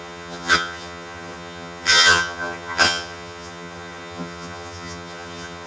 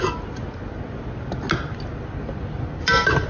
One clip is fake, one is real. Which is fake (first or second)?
first